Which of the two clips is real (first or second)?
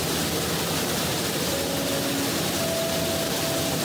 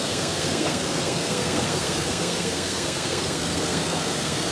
first